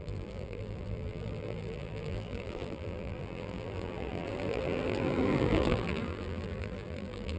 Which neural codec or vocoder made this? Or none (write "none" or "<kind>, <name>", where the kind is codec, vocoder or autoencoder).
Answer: vocoder, BigVGAN v2